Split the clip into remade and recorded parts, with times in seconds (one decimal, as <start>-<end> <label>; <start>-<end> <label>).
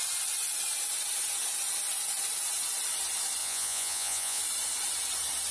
0.0-3.4 recorded; 3.4-4.4 remade; 4.4-5.5 recorded